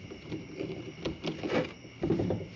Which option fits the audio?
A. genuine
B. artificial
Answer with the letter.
A